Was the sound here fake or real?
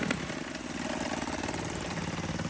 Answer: real